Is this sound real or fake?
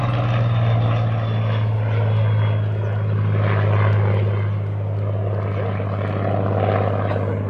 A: real